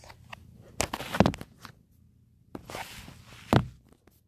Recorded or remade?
recorded